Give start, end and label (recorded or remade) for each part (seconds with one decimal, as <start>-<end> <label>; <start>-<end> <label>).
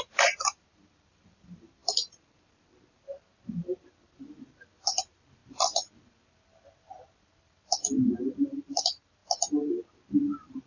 0.0-1.8 remade; 1.8-3.5 recorded; 3.5-9.2 remade; 9.2-10.1 recorded; 10.1-10.7 remade